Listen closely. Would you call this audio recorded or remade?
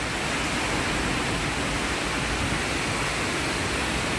recorded